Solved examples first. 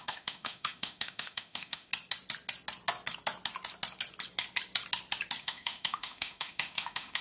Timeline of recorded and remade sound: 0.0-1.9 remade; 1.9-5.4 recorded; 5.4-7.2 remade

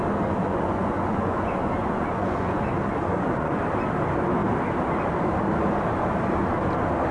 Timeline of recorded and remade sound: 0.0-0.4 recorded; 0.4-3.6 remade; 3.6-7.1 recorded